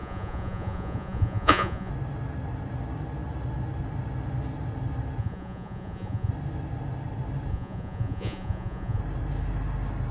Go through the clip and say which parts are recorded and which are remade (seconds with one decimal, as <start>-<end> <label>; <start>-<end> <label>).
0.0-1.9 remade; 1.9-5.2 recorded; 5.2-6.3 remade; 6.3-7.5 recorded; 7.5-9.0 remade; 9.0-10.1 recorded